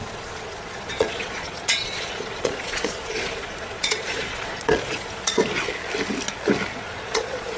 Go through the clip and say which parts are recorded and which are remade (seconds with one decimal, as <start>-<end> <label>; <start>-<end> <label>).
0.0-5.4 remade; 5.4-6.7 recorded; 6.7-7.6 remade